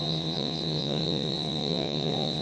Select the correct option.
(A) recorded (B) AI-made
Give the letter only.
B